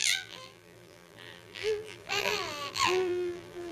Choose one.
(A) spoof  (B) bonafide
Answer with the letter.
A